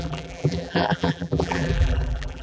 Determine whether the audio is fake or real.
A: fake